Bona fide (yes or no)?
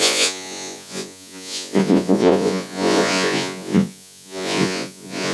no